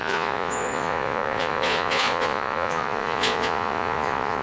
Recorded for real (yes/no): no